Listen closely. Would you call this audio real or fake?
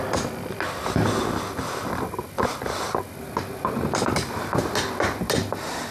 fake